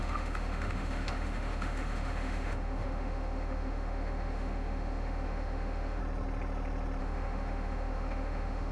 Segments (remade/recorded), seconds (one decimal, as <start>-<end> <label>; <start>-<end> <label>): 0.0-6.0 remade; 6.0-7.0 recorded; 7.0-8.7 remade